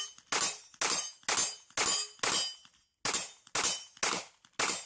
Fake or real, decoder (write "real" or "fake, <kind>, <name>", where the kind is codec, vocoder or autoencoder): real